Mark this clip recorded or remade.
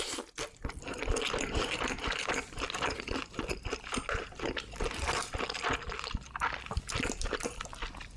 recorded